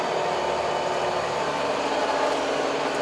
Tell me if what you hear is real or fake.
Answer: real